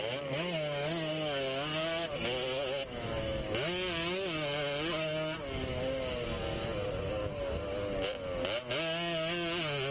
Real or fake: real